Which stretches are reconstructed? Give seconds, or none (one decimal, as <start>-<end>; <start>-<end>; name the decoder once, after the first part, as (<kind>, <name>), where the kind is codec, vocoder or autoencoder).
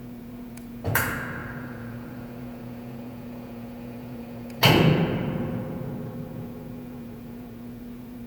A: 0.0-8.3 (vocoder, Vocos)